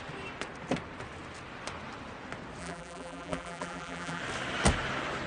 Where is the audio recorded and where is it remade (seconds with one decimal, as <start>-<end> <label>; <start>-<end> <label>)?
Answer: 0.0-2.6 recorded; 2.6-4.2 remade; 4.2-5.3 recorded